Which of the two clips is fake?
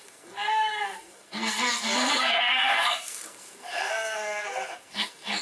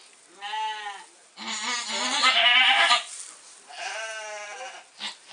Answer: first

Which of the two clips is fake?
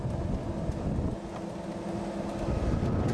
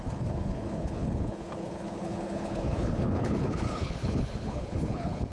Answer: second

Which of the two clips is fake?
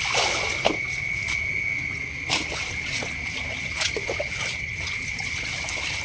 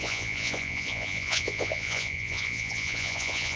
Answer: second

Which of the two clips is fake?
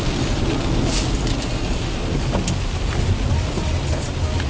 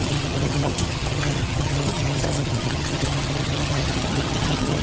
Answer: second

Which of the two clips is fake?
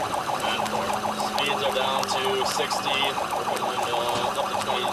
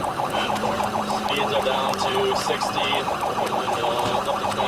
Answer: second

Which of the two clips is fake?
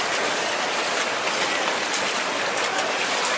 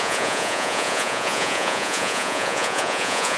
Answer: second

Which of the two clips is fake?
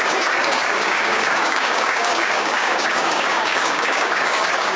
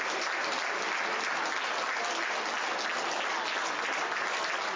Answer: first